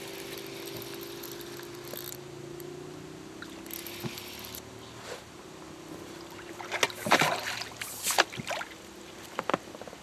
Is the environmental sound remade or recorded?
recorded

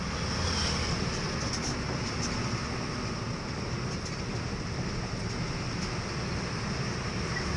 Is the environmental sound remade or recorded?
recorded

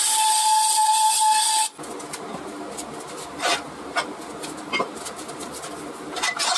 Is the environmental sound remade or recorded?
recorded